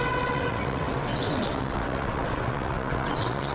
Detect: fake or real fake